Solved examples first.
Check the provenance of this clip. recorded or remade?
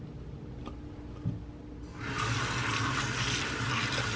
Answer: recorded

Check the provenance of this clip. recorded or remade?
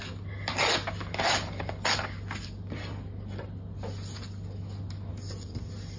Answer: recorded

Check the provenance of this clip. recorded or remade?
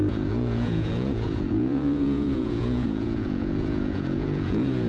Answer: remade